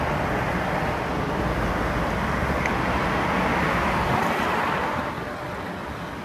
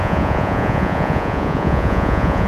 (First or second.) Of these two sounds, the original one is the first